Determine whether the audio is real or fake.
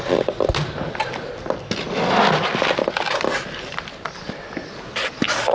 real